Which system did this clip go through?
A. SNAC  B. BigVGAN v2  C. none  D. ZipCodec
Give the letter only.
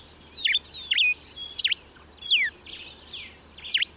C